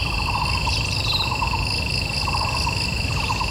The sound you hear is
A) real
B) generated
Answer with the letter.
A